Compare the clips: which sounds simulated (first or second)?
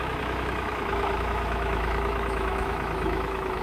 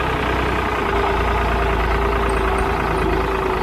first